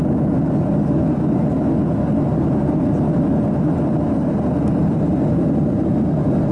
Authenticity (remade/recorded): recorded